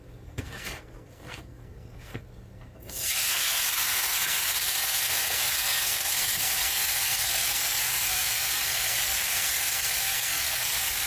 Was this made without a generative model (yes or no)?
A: no